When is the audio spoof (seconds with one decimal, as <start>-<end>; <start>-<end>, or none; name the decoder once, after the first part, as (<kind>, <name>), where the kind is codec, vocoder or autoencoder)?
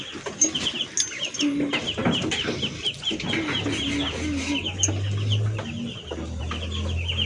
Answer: none